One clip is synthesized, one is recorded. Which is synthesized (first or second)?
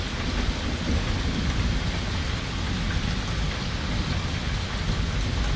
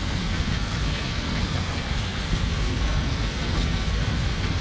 second